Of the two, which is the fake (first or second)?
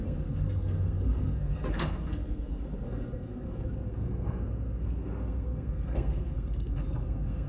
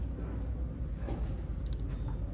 first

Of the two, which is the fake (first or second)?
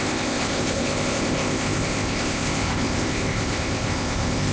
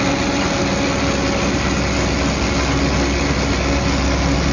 first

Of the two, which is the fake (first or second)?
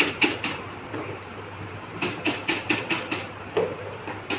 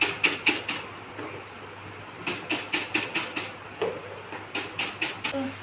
first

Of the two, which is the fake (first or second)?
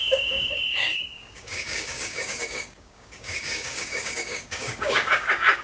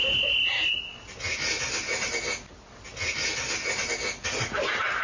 first